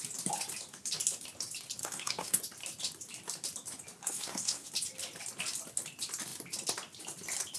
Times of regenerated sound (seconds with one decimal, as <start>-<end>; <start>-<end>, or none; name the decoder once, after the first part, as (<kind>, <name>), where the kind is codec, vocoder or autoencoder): 1.8-2.4 (codec, SNAC); 4.0-4.7